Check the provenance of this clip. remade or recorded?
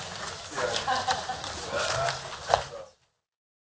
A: recorded